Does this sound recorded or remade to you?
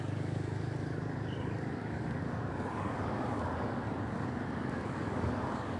remade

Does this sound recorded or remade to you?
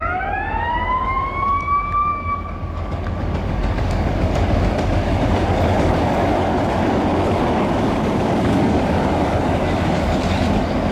remade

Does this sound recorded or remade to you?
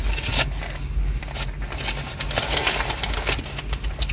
recorded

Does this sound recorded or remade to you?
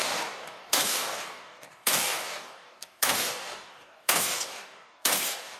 remade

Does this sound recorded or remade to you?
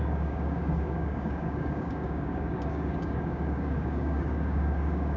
remade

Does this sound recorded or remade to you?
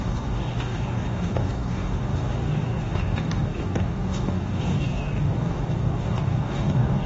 remade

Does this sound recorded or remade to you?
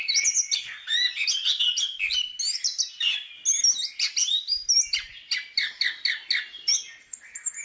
recorded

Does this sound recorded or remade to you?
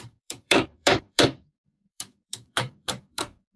remade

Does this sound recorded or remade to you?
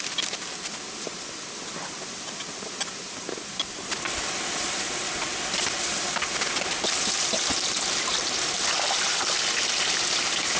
recorded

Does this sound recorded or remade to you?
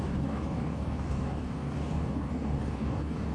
remade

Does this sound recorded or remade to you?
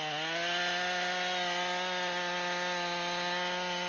recorded